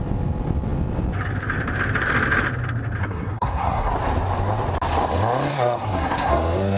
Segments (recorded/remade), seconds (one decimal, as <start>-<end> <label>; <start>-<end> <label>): 0.0-3.0 recorded; 3.0-3.9 remade; 3.9-5.5 recorded; 5.5-6.8 remade

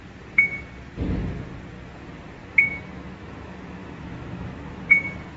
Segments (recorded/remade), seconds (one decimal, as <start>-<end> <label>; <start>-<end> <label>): 0.0-2.4 recorded; 2.4-4.7 remade; 4.7-5.4 recorded

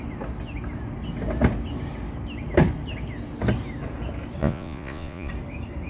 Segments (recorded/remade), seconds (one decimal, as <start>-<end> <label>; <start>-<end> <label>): 0.0-4.4 recorded; 4.4-5.3 remade; 5.3-5.9 recorded

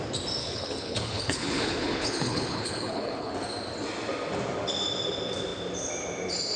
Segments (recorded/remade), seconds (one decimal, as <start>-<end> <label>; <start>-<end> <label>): 0.0-0.4 recorded; 0.4-3.3 remade; 3.3-6.6 recorded

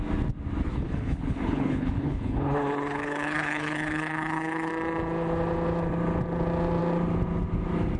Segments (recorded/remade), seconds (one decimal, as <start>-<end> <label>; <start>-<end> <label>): 0.0-0.7 recorded; 0.7-4.7 remade; 4.7-8.0 recorded

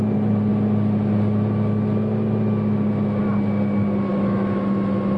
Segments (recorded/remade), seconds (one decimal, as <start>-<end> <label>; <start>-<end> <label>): 0.0-4.1 recorded; 4.1-5.2 remade